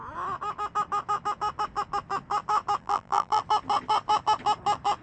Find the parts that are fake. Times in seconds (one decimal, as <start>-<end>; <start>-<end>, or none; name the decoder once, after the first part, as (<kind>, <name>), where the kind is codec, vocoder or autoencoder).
2.8-3.4 (vocoder, BigVGAN v2)